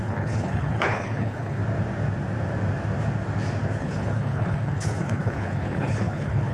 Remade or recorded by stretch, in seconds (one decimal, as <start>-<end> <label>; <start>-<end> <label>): 0.0-1.6 remade; 1.6-3.8 recorded; 3.8-6.5 remade